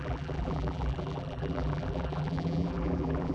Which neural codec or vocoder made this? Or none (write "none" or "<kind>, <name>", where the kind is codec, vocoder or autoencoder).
vocoder, BigVGAN v2